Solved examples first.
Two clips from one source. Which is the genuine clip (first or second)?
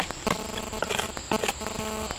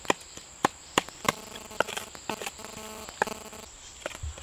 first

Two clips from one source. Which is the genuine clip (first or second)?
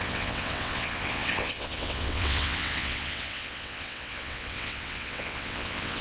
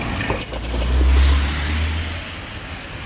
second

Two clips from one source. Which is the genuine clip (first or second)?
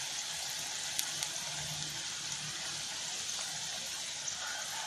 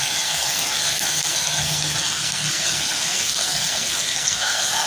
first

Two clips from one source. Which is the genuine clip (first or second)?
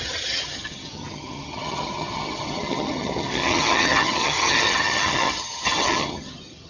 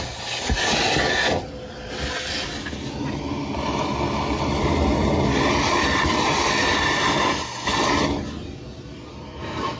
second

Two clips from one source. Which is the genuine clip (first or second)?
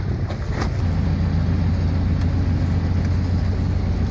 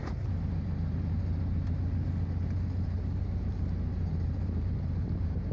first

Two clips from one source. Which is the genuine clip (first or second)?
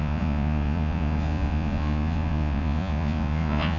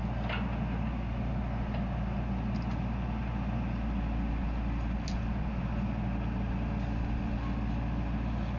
second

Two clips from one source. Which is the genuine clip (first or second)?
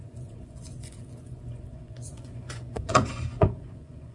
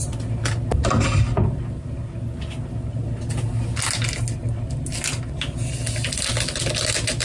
second